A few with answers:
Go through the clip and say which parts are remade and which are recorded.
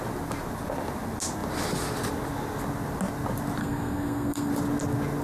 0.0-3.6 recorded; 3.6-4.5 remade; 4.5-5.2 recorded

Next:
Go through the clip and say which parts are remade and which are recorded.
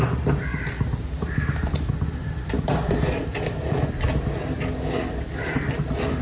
0.0-6.2 recorded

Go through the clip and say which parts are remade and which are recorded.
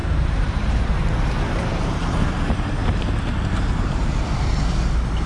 0.0-1.0 remade; 1.0-2.8 recorded; 2.8-4.5 remade; 4.5-5.3 recorded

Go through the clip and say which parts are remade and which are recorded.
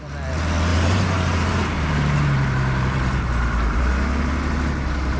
0.0-0.7 recorded; 0.7-3.8 remade; 3.8-5.2 recorded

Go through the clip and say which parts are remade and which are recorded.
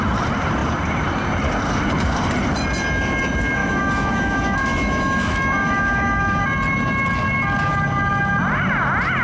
0.0-3.6 recorded; 3.6-6.4 remade; 6.4-9.2 recorded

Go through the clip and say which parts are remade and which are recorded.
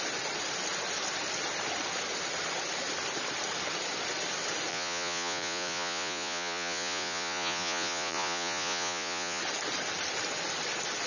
0.0-4.7 recorded; 4.7-9.4 remade; 9.4-11.1 recorded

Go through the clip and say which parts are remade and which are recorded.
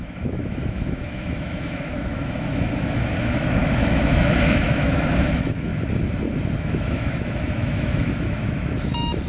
0.0-5.7 remade; 5.7-6.6 recorded; 6.6-9.3 remade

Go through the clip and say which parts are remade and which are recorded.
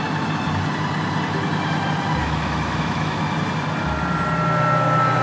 0.0-2.2 recorded; 2.2-3.2 remade; 3.2-5.2 recorded